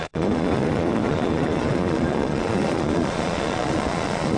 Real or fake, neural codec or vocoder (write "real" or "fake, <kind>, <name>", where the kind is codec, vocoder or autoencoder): fake, vocoder, Vocos